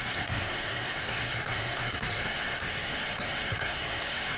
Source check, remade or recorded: remade